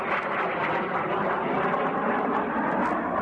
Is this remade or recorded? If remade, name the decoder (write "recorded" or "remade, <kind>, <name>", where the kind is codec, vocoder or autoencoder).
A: recorded